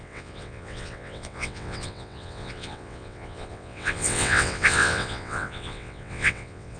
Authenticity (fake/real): fake